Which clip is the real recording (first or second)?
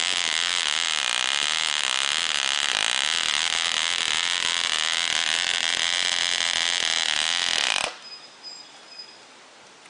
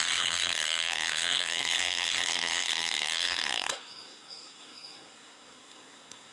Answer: first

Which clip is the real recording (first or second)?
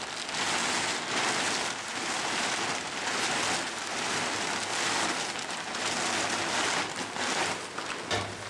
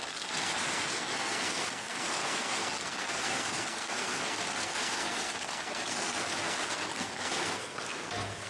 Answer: first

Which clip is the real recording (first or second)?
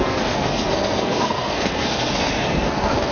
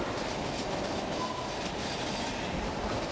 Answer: second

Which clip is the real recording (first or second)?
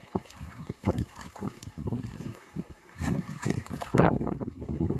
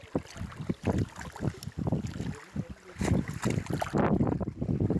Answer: second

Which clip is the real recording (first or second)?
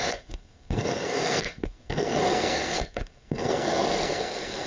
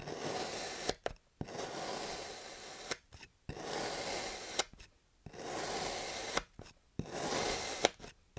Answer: second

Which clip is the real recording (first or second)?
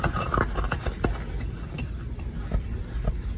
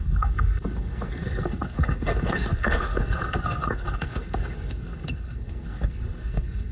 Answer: first